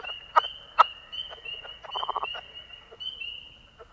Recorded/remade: recorded